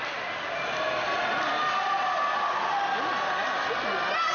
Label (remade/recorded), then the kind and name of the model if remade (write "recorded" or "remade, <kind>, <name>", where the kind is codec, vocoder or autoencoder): recorded